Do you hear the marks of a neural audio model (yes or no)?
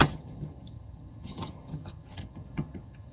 yes